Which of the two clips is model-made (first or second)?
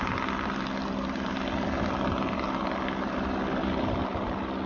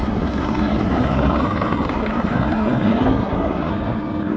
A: second